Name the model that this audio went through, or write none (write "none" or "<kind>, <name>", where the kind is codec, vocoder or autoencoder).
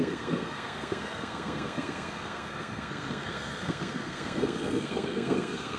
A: codec, SNAC